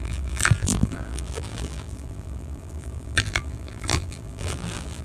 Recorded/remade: remade